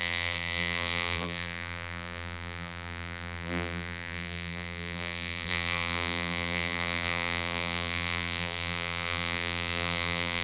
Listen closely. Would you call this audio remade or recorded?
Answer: remade